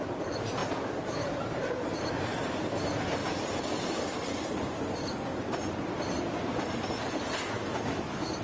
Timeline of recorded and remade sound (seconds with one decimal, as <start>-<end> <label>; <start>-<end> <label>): 0.0-0.6 recorded; 0.6-2.1 remade; 2.1-8.4 recorded